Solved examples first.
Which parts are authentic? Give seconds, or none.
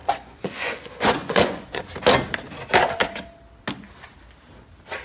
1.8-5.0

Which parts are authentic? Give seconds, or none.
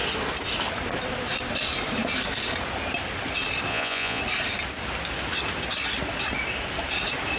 0.0-3.7; 4.2-7.4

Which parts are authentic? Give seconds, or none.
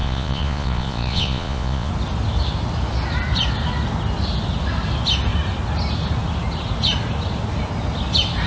1.9-8.5